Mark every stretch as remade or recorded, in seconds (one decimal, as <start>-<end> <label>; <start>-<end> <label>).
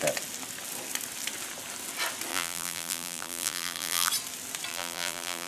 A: 0.0-2.3 recorded; 2.3-4.1 remade; 4.1-4.7 recorded; 4.7-5.5 remade